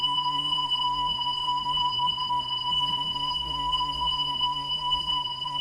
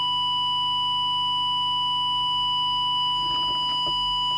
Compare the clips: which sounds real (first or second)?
second